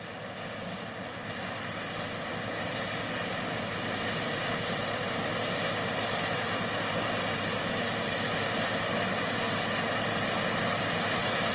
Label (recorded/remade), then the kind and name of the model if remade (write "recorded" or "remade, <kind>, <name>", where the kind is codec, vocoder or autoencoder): recorded